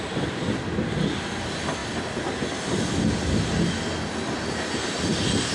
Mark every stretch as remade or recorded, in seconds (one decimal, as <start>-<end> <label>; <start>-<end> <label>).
0.0-5.5 recorded